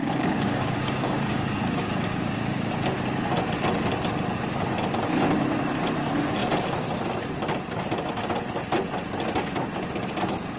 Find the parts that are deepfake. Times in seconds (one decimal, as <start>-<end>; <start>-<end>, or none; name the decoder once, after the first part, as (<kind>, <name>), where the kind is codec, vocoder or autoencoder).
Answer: 0.0-2.7 (codec, DAC)